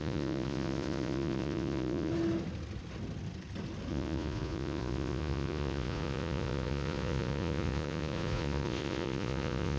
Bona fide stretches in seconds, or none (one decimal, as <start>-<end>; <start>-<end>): 2.1-3.9